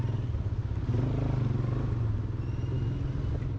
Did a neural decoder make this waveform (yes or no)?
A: no